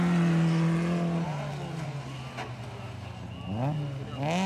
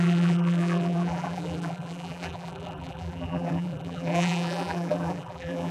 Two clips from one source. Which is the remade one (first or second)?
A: second